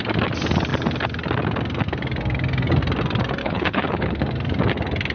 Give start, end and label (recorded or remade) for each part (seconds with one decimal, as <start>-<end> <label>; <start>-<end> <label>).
0.0-3.4 recorded; 3.4-4.2 remade; 4.2-5.1 recorded